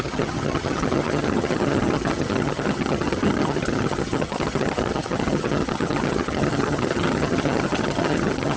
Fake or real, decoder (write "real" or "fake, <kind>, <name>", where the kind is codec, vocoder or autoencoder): fake, vocoder, HiFi-GAN